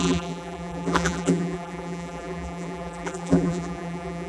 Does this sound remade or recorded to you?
remade